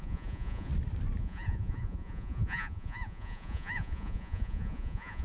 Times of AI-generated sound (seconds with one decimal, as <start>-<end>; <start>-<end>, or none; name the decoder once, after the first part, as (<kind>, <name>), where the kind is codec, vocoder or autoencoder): 0.0-0.7 (vocoder, Vocos); 1.2-5.2